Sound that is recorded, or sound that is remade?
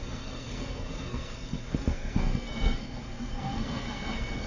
remade